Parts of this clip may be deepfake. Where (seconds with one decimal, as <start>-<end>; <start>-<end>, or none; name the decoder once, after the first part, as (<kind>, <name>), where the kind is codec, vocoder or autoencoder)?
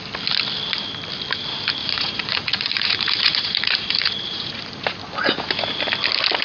1.8-4.5 (vocoder, Vocos)